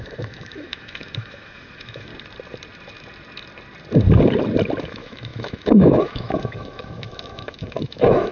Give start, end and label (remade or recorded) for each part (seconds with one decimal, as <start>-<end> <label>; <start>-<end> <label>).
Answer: 0.0-2.1 remade; 2.1-4.8 recorded; 4.8-8.3 remade